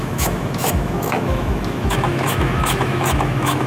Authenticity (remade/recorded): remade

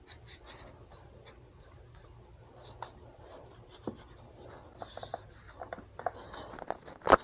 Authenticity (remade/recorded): recorded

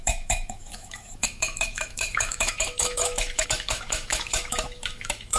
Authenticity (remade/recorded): remade